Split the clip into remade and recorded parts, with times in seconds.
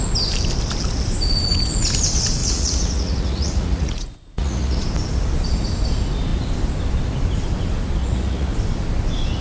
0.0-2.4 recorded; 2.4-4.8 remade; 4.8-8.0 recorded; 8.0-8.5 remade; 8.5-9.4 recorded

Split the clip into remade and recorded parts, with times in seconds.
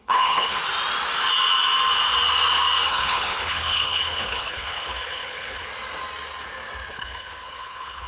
0.0-0.6 remade; 0.6-2.9 recorded; 2.9-5.7 remade; 5.7-6.9 recorded; 6.9-8.1 remade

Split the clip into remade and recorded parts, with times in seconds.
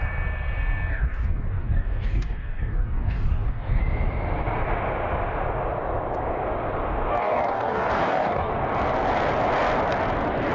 0.0-0.9 recorded; 0.9-3.8 remade; 3.8-7.1 recorded; 7.1-8.5 remade; 8.5-10.5 recorded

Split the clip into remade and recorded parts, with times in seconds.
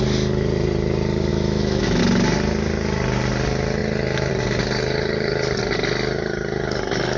0.0-1.3 recorded; 1.3-2.0 remade; 2.0-7.2 recorded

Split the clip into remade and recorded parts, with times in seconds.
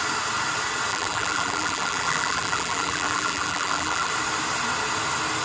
0.0-0.9 recorded; 0.9-4.1 remade; 4.1-5.4 recorded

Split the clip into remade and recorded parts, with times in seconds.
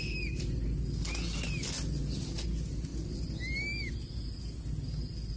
0.0-5.4 recorded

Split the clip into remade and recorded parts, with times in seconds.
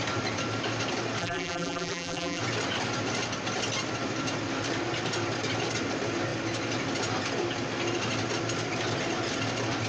0.0-1.2 recorded; 1.2-2.4 remade; 2.4-9.9 recorded